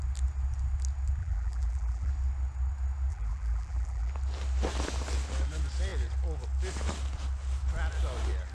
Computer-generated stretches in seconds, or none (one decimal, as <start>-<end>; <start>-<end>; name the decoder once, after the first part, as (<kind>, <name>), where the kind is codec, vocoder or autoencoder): 1.2-2.1 (vocoder, BigVGAN v2); 3.1-4.1